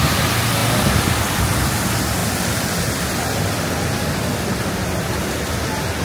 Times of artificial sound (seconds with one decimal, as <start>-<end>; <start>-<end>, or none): none